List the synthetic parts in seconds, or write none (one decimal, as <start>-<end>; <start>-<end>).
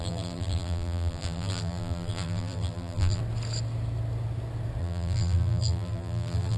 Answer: 0.0-3.2; 4.8-6.6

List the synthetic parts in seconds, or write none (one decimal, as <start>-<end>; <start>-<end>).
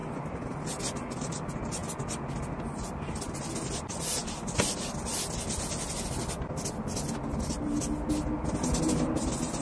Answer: none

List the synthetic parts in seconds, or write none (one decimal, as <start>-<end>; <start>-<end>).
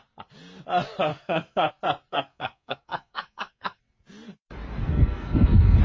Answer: 1.1-1.7; 2.1-3.8; 4.8-5.8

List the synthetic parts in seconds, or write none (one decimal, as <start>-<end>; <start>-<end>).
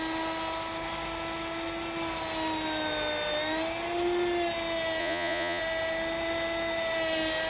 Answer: 5.0-5.6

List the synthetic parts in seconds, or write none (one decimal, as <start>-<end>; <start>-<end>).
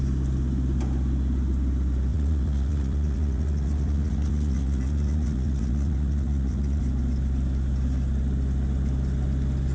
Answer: 2.1-6.8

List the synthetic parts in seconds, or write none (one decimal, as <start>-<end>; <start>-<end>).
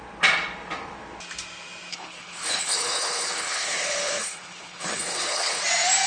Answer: 1.9-5.6